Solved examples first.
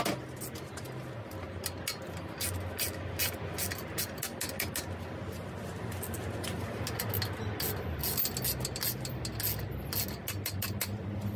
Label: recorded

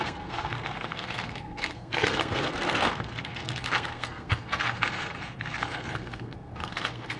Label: remade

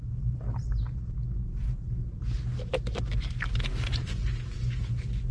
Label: recorded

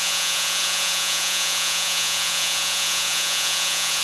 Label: remade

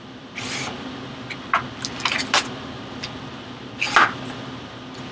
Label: recorded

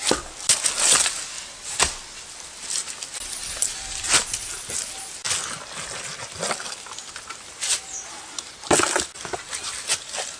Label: recorded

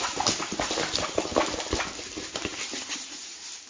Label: recorded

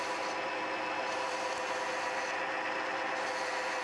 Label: recorded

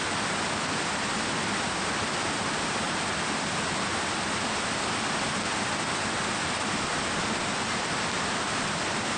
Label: recorded